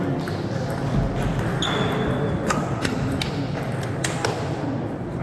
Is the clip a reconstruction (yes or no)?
no